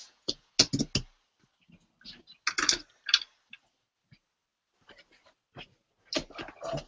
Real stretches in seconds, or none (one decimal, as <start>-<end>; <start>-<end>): 0.5-6.9

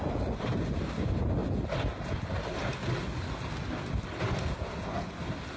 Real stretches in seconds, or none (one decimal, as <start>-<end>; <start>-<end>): 0.0-5.6

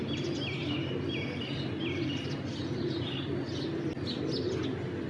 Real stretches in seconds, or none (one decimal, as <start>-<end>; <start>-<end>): 0.0-5.1

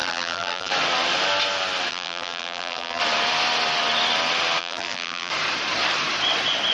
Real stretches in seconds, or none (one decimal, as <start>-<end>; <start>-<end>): 0.7-1.9; 3.0-4.6; 5.3-6.7

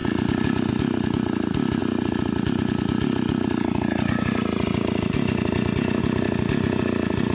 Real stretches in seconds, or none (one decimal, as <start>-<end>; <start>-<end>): 0.0-7.3

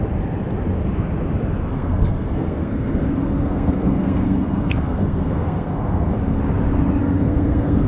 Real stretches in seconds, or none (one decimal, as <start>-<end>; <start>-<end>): 0.0-1.7; 6.4-7.0

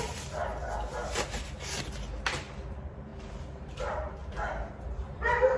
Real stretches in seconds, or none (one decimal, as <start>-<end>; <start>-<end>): 0.4-2.7